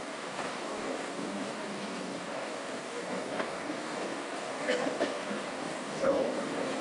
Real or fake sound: fake